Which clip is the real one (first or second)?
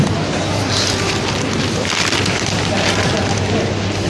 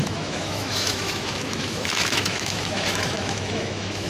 first